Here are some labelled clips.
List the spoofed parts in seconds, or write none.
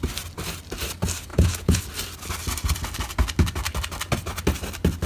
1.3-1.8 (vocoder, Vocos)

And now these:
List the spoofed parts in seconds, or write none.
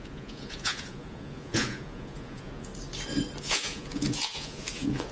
0.0-2.7 (vocoder, Vocos); 3.4-5.1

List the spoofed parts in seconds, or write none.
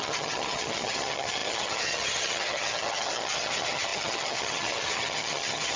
0.0-5.8 (vocoder, HiFi-GAN)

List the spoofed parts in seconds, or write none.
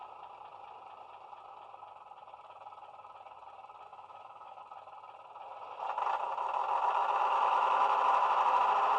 3.9-4.6 (autoencoder, DAC-VAE); 7.0-8.0